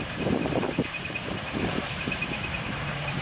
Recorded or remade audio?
remade